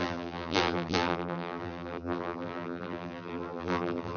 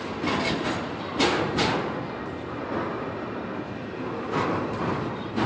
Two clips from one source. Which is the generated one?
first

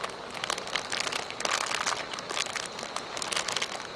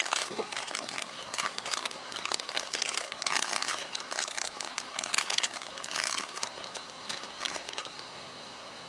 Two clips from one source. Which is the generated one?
second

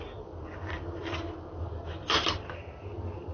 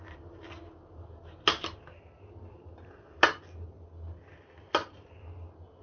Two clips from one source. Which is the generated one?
first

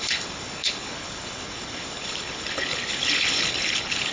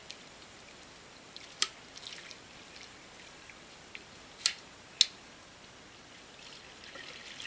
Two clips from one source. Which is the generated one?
first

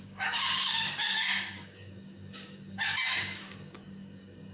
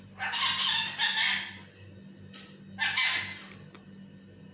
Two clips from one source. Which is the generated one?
first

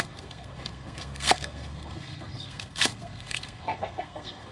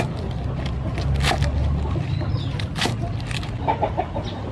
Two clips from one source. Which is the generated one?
first